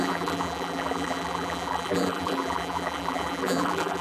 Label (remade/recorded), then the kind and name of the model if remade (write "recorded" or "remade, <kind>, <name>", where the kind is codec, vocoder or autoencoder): remade, vocoder, BigVGAN v2